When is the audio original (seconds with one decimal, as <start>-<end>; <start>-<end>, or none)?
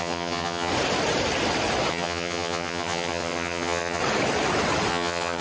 0.7-1.9; 4.0-4.9